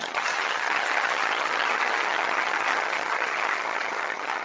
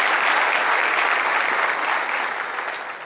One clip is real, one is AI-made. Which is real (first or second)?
second